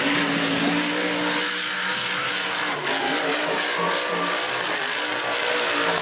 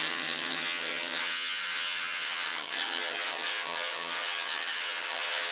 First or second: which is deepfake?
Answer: second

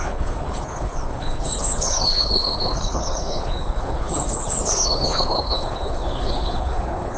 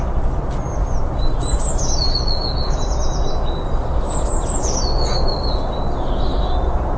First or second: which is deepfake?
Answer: first